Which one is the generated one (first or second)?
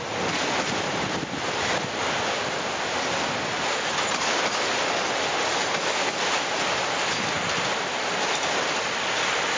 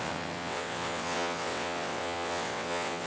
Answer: second